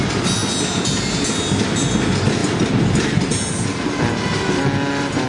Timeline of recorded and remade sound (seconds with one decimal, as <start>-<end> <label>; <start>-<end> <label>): 0.0-5.3 recorded